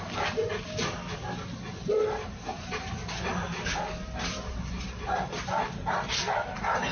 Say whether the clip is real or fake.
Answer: real